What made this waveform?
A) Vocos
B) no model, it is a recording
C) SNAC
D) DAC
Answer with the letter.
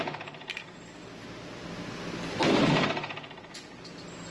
B